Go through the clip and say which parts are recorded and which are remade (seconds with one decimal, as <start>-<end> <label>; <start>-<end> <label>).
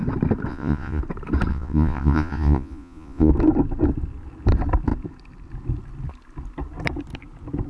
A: 0.0-0.5 recorded; 0.5-1.0 remade; 1.0-1.5 recorded; 1.5-3.3 remade; 3.3-7.7 recorded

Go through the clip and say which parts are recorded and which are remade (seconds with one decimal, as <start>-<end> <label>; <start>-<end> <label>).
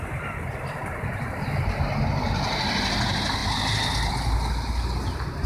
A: 0.0-5.5 recorded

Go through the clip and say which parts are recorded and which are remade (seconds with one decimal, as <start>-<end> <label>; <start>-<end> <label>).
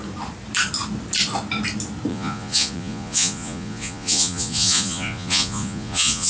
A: 0.0-2.1 recorded; 2.1-6.3 remade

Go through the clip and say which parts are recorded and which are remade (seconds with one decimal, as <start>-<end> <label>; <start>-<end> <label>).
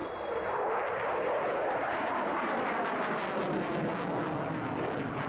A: 0.0-5.3 recorded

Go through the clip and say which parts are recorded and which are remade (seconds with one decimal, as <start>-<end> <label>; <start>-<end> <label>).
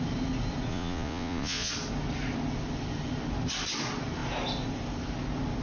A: 0.0-0.7 recorded; 0.7-1.7 remade; 1.7-5.6 recorded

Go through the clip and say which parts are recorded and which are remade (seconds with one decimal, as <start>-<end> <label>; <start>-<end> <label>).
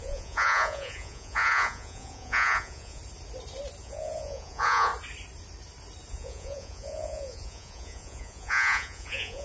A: 0.0-3.0 remade; 3.0-3.8 recorded; 3.8-4.9 remade; 4.9-6.1 recorded; 6.1-9.4 remade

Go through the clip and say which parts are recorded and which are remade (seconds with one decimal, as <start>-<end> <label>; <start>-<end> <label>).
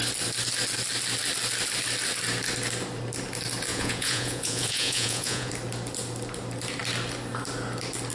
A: 0.0-3.7 recorded; 3.7-5.5 remade; 5.5-8.1 recorded